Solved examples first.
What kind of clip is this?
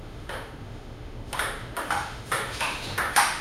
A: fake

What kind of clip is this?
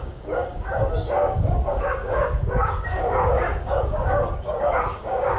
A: fake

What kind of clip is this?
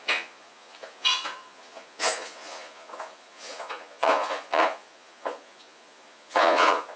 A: fake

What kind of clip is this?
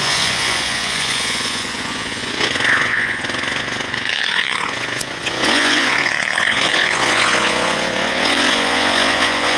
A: fake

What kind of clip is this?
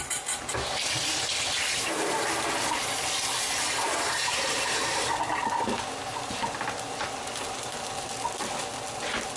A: real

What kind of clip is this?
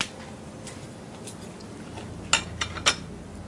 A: real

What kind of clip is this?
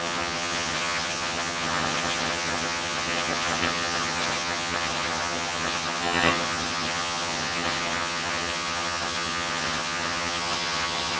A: fake